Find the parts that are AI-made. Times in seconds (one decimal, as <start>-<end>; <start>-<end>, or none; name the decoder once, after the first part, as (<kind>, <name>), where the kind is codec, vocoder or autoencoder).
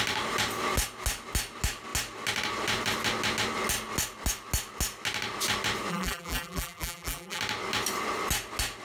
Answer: 5.9-7.4 (vocoder, BigVGAN v2)